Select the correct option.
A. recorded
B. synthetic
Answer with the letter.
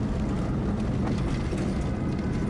A